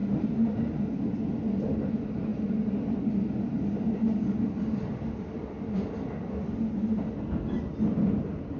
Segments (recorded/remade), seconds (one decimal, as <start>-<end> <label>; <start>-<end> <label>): 0.0-8.6 recorded